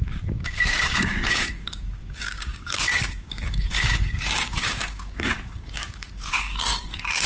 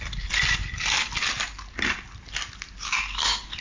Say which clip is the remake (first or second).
first